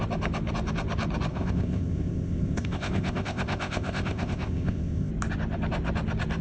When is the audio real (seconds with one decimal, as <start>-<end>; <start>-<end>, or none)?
0.0-1.3; 5.1-6.4